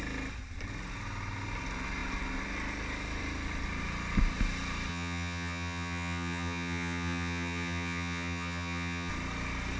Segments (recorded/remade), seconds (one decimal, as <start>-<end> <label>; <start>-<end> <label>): 0.0-4.9 recorded; 4.9-9.1 remade; 9.1-9.8 recorded